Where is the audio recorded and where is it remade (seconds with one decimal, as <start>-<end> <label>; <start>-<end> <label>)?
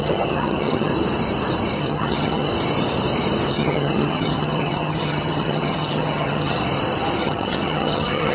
0.0-0.9 remade; 0.9-1.8 recorded; 1.8-2.5 remade; 2.5-3.5 recorded; 3.5-6.6 remade; 6.6-7.2 recorded; 7.2-8.3 remade